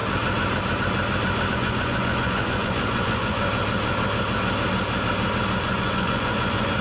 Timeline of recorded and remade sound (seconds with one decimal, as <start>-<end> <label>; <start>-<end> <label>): 0.0-1.5 recorded; 1.5-3.4 remade; 3.4-5.6 recorded; 5.6-6.8 remade